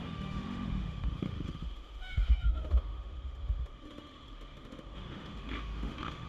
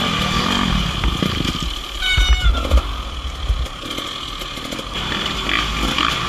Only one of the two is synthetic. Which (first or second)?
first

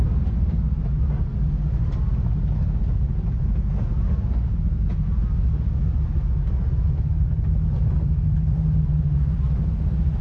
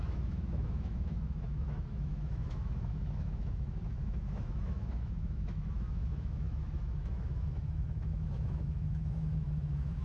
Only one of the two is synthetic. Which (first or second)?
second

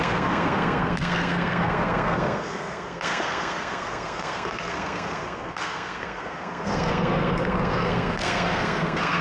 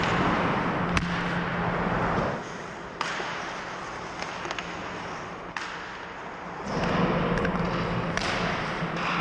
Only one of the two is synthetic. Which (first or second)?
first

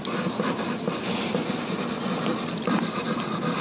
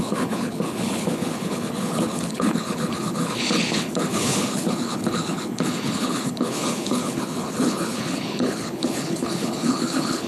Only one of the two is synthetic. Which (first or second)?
second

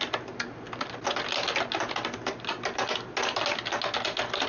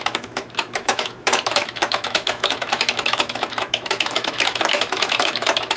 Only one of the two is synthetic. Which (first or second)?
second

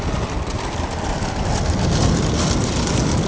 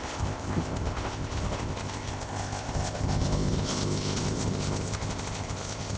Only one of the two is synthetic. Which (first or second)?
second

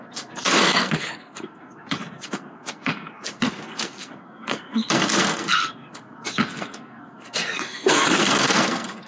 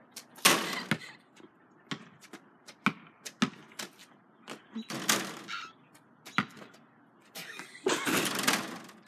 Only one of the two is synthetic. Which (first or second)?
first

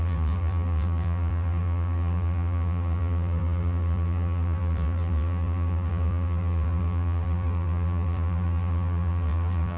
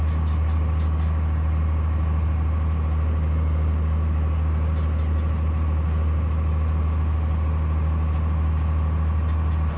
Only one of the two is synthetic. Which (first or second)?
first